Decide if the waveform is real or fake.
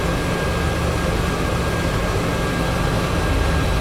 real